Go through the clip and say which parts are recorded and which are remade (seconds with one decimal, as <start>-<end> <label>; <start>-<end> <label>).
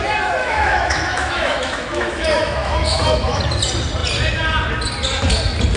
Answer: 0.0-0.4 recorded; 0.4-3.4 remade; 3.4-5.8 recorded